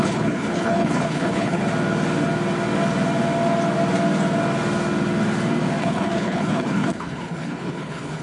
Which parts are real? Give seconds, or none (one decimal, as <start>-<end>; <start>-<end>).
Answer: 1.6-5.8